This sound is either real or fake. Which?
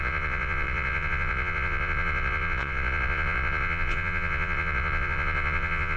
fake